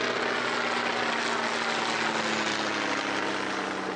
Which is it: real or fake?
real